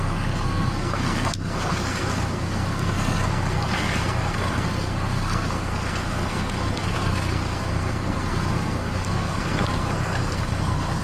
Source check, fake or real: fake